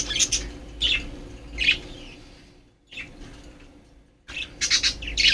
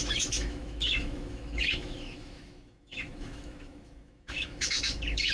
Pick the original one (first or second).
first